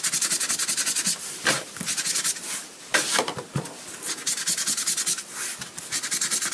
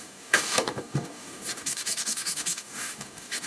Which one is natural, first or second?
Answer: first